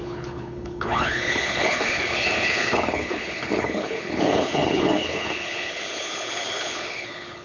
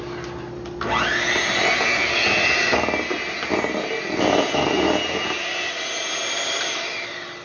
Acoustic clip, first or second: second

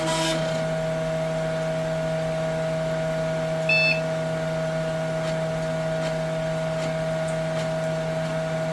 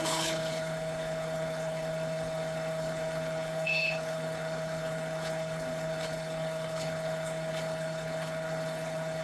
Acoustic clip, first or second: first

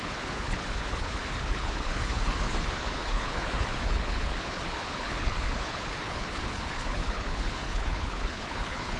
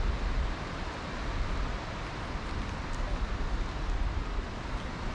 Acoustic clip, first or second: second